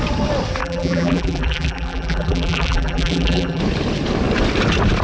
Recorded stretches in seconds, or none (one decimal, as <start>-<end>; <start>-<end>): 0.0-0.6; 3.6-5.0